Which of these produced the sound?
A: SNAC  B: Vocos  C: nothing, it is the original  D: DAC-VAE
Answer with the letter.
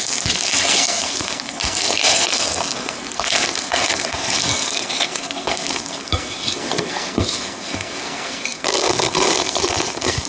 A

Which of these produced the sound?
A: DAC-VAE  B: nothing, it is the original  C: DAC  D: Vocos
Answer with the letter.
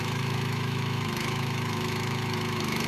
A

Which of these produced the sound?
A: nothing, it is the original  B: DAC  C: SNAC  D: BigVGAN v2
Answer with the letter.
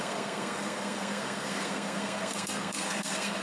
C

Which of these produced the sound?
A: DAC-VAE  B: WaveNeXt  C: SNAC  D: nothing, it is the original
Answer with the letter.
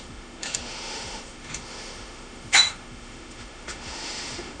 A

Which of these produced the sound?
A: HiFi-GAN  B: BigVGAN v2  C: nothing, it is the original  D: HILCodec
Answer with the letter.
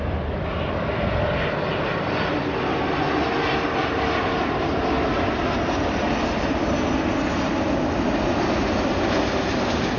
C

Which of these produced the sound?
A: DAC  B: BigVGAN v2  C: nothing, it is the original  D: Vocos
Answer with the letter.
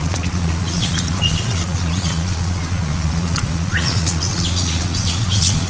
D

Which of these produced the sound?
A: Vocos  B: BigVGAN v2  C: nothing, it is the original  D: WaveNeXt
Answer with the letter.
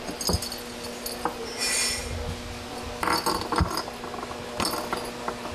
C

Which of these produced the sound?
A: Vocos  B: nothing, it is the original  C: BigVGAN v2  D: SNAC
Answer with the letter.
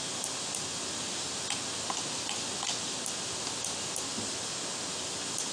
B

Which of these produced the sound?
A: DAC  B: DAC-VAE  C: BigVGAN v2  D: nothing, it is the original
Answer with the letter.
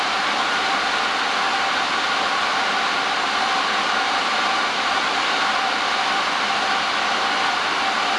C